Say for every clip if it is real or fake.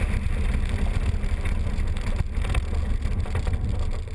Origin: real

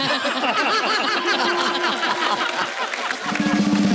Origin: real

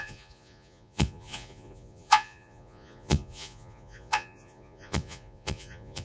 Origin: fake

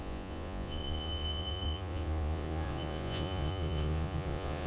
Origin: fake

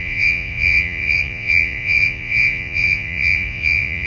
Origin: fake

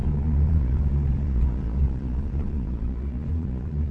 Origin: fake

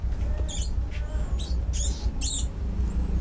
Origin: real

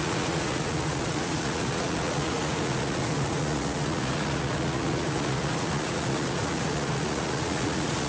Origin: fake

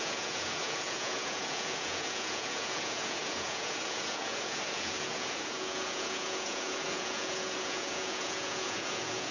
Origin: fake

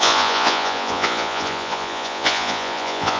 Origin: fake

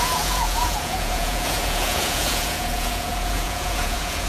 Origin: fake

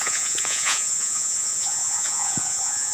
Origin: fake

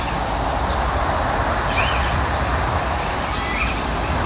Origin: real